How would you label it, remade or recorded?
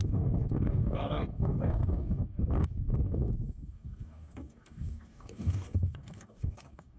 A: remade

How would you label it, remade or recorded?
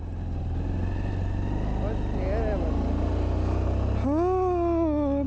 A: recorded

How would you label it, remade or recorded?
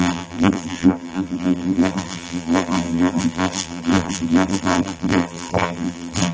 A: remade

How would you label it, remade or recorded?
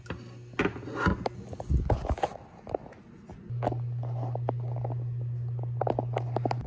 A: recorded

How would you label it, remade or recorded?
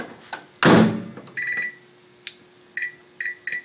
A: recorded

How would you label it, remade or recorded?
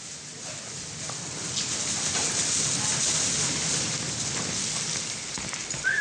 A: recorded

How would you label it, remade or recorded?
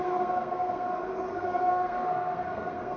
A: remade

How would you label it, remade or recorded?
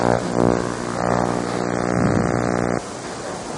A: recorded